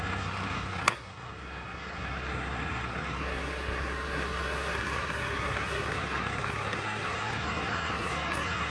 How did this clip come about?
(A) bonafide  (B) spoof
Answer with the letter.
B